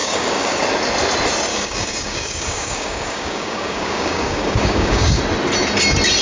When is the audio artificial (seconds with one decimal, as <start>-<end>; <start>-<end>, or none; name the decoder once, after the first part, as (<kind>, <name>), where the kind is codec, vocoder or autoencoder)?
0.0-0.6 (codec, DAC); 1.5-5.2